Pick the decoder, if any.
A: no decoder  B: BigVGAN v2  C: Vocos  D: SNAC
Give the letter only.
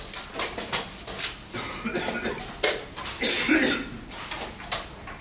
A